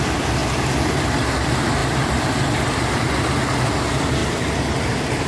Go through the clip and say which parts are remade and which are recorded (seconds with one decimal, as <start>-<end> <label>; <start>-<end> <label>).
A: 0.0-5.3 recorded